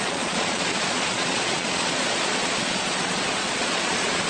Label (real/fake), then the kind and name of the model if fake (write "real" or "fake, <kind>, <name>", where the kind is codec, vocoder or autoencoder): fake, vocoder, Vocos